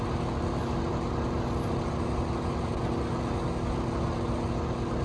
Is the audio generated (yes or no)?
no